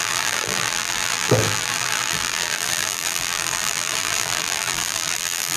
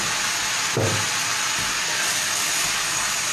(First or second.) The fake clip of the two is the first